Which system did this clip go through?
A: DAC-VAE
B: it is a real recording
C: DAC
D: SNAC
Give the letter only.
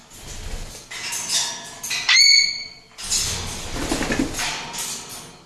B